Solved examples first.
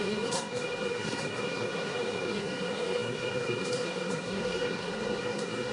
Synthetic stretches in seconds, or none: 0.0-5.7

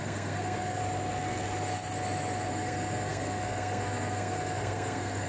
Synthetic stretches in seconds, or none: 0.0-0.8; 2.5-5.3

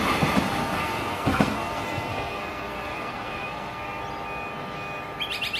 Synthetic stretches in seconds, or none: 0.6-4.0

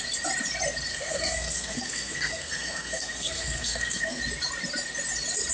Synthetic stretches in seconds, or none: 0.9-4.2

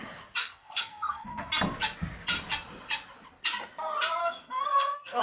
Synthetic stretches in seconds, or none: 0.4-1.5; 4.2-5.2